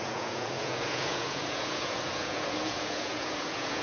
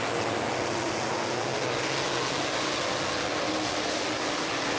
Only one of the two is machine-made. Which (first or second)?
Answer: first